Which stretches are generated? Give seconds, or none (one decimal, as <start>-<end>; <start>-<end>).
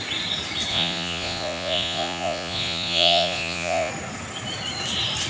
0.7-3.9